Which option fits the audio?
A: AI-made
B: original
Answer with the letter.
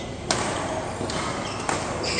B